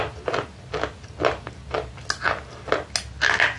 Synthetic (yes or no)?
no